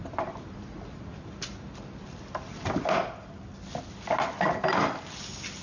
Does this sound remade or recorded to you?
recorded